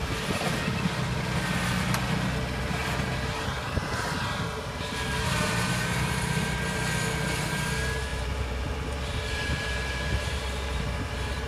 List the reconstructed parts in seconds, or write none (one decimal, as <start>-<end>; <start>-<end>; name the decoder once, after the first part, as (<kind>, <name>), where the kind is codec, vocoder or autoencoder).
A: 2.8-6.4 (vocoder, BigVGAN v2); 8.1-11.5